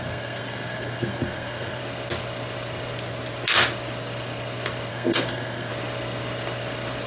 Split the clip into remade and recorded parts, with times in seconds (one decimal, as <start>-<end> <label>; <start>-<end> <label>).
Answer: 0.0-1.8 remade; 1.8-4.9 recorded; 4.9-5.7 remade; 5.7-7.1 recorded